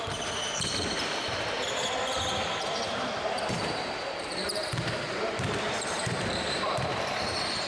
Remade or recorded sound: remade